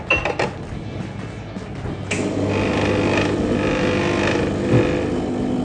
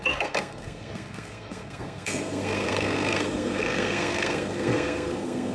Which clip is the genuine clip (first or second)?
first